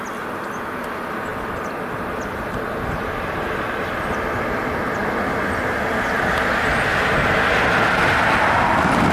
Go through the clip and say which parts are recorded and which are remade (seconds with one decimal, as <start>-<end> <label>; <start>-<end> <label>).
0.0-1.3 recorded; 1.3-4.6 remade; 4.6-9.1 recorded